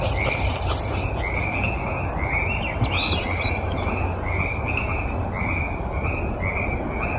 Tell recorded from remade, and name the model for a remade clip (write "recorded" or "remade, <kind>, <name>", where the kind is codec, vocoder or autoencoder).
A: recorded